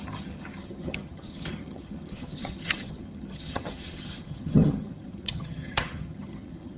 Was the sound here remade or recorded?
remade